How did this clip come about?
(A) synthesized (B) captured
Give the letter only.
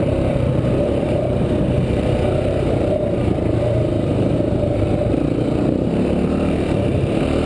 A